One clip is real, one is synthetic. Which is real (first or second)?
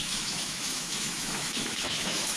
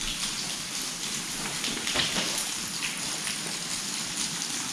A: second